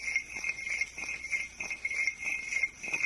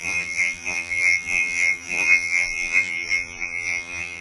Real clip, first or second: first